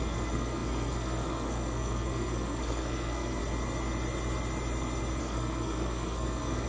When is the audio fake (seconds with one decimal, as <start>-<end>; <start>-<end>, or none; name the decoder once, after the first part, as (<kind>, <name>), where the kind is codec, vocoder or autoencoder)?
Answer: 0.0-3.4 (codec, SNAC); 5.2-6.7